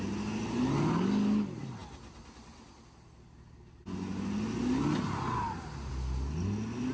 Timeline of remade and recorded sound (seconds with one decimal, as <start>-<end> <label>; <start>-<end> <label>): 0.0-6.9 recorded